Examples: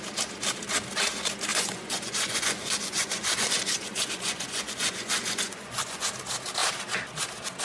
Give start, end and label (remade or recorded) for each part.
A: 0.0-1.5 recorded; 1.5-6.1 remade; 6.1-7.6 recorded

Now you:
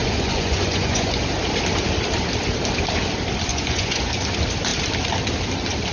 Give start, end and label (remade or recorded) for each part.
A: 0.0-1.2 remade; 1.2-3.5 recorded; 3.5-4.1 remade; 4.1-5.9 recorded

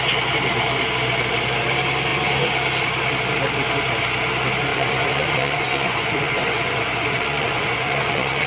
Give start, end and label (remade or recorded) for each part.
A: 0.0-4.7 recorded; 4.7-8.5 remade

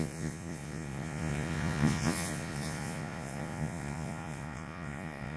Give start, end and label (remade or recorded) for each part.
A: 0.0-5.4 remade